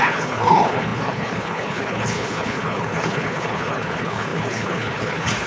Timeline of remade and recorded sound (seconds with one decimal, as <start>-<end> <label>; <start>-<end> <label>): 0.0-5.5 remade